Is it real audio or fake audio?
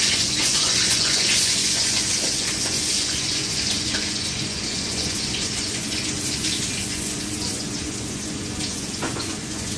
fake